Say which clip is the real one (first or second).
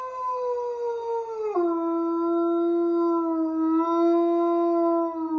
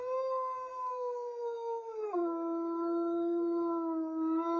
first